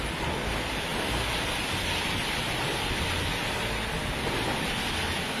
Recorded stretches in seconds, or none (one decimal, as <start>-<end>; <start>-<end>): 0.0-5.4